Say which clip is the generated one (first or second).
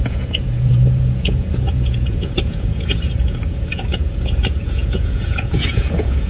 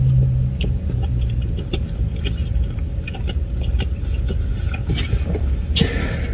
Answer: first